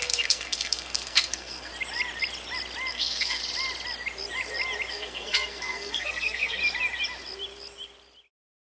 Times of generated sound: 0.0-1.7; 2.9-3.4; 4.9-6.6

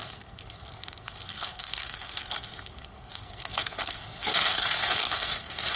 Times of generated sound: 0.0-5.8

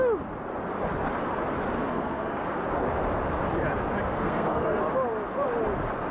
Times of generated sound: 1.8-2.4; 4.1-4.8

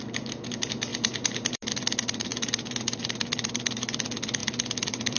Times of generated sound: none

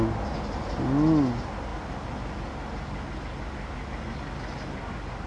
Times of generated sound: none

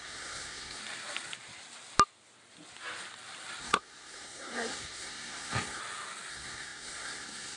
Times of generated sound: 0.0-0.8; 3.6-5.8; 6.3-7.6